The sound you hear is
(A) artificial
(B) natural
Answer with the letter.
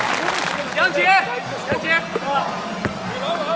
B